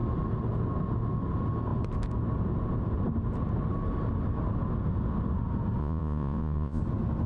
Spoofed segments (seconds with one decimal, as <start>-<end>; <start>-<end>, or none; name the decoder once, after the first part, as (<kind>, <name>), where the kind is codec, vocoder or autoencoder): 5.8-6.8 (vocoder, Vocos)